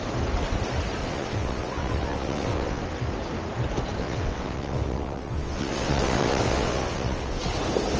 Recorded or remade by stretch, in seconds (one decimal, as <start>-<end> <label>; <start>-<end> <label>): 0.0-1.0 recorded; 1.0-2.8 remade; 2.8-4.0 recorded; 4.0-7.4 remade; 7.4-8.0 recorded